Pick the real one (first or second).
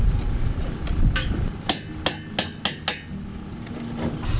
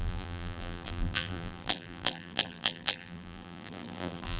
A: first